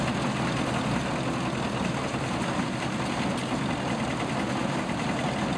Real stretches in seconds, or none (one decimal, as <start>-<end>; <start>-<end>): 0.0-4.6